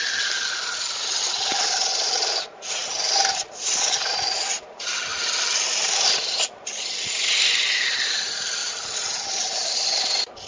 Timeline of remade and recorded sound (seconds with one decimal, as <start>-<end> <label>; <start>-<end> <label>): 0.0-10.5 recorded